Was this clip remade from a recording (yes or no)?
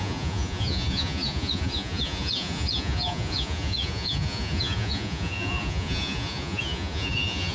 yes